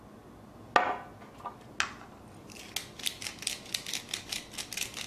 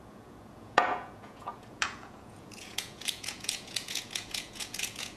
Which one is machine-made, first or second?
second